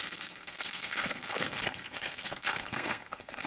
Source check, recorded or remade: remade